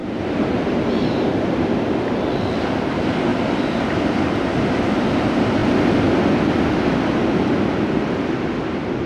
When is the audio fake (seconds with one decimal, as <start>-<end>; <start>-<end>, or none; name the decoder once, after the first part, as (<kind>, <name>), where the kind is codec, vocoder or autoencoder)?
0.0-1.7 (vocoder, BigVGAN v2); 3.3-3.9